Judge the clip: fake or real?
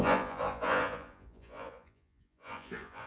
fake